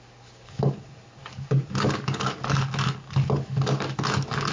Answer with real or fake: fake